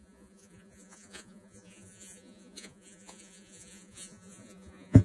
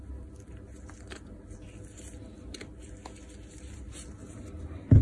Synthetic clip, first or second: first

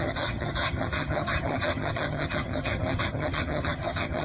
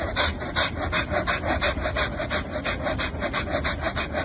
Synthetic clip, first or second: first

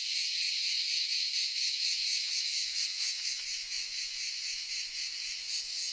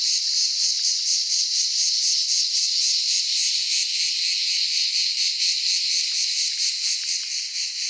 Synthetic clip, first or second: first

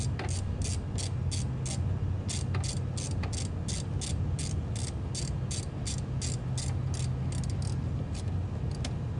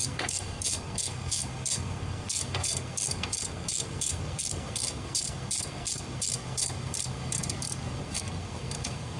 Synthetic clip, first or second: second